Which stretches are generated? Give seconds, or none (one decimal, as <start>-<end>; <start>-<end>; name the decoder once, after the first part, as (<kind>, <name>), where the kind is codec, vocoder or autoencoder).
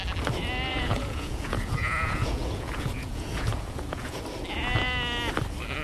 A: 0.7-4.2 (vocoder, Vocos)